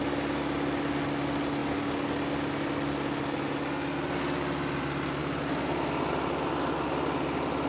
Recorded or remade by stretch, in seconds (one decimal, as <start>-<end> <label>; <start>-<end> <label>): 0.0-7.7 recorded